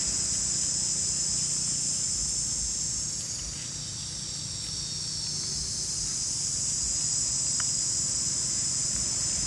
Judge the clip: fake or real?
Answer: real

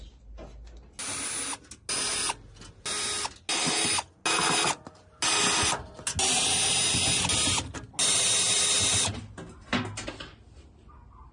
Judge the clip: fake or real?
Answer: real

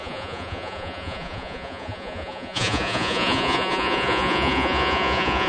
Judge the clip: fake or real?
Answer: fake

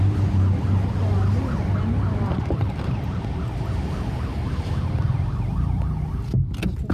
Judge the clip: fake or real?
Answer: real